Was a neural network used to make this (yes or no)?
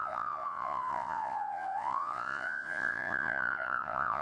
yes